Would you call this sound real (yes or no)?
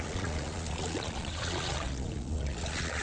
no